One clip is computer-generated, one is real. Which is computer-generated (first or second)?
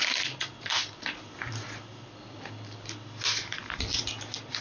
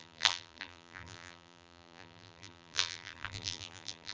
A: second